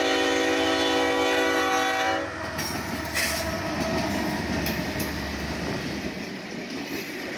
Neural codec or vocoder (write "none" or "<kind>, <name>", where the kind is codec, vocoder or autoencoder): none